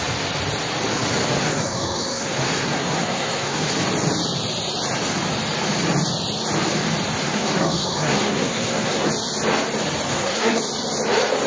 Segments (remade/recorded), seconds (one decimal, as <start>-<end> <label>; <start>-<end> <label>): 0.0-1.4 recorded; 1.4-3.7 remade; 3.7-7.3 recorded; 7.3-9.1 remade; 9.1-10.1 recorded; 10.1-10.6 remade; 10.6-11.5 recorded